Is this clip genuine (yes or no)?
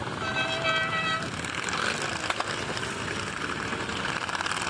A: yes